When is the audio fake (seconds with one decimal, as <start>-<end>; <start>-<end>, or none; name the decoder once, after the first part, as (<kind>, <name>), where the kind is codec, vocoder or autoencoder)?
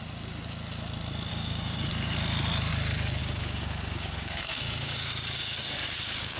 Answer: 1.3-1.9 (codec, DAC); 3.2-6.4